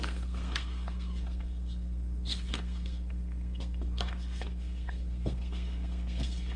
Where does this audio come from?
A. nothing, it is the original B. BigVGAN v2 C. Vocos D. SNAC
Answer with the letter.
D